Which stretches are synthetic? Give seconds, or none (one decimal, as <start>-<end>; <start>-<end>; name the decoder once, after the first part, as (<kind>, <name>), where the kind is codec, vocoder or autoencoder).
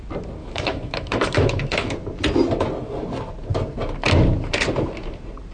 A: 0.4-1.9 (autoencoder, DAC-VAE)